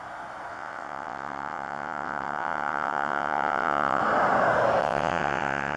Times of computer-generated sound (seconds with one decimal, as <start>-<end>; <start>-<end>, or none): 0.5-4.0; 4.8-5.8